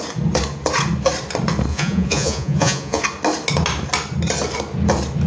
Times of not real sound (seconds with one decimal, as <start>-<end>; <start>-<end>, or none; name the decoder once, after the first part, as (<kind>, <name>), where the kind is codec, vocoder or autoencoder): 1.7-3.0 (vocoder, Vocos)